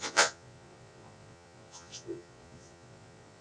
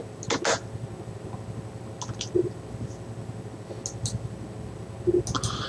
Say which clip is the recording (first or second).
second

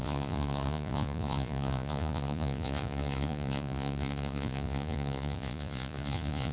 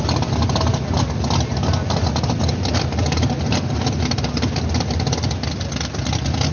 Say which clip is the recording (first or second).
second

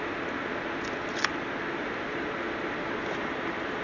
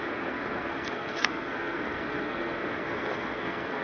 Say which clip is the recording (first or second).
first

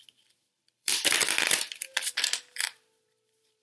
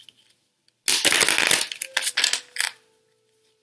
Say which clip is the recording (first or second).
second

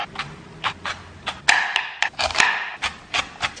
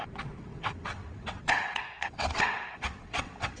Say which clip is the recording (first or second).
first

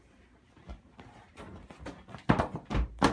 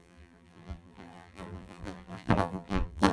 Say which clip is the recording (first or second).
first